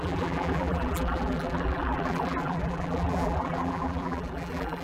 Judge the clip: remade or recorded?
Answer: remade